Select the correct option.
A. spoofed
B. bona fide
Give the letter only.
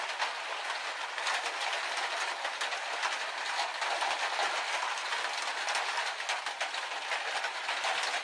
B